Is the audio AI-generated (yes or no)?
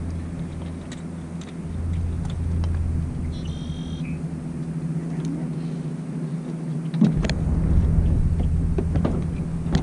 no